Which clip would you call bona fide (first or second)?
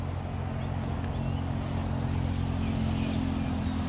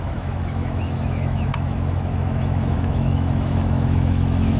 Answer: first